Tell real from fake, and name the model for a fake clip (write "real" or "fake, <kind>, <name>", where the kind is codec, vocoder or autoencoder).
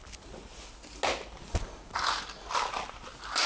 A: real